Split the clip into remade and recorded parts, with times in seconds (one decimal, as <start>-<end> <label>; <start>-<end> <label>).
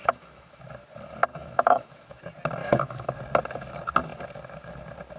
0.0-0.6 remade; 0.6-1.3 recorded; 1.3-2.2 remade; 2.2-2.6 recorded; 2.6-3.1 remade; 3.1-5.2 recorded